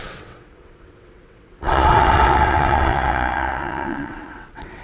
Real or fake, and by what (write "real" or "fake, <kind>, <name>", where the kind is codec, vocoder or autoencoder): fake, vocoder, WaveNeXt